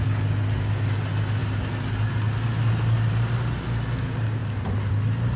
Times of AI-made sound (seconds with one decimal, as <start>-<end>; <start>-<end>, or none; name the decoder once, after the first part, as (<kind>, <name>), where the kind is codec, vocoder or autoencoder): none